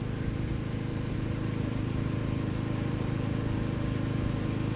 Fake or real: fake